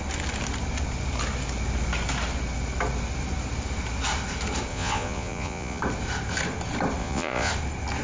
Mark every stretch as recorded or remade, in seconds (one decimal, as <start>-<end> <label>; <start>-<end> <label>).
0.0-4.7 recorded; 4.7-5.8 remade; 5.8-7.0 recorded; 7.0-7.5 remade; 7.5-8.0 recorded